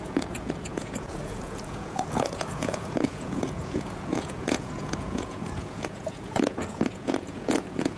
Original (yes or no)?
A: no